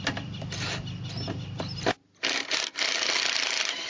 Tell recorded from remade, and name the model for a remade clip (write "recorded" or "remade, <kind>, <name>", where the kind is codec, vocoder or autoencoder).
recorded